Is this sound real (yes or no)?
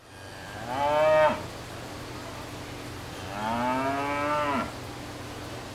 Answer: yes